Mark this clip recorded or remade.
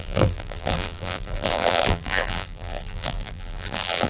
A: remade